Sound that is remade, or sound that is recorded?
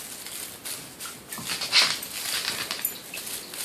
recorded